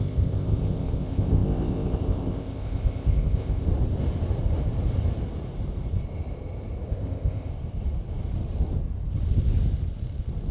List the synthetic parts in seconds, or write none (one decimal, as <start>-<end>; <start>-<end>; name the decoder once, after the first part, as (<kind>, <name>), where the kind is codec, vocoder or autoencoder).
0.0-3.7 (codec, ZipCodec); 6.9-7.5